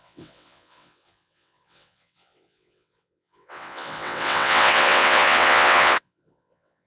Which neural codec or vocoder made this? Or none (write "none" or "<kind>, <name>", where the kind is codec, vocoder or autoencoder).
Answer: vocoder, WaveNeXt